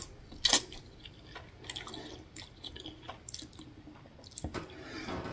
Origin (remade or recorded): recorded